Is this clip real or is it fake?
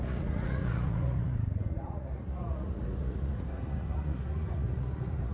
fake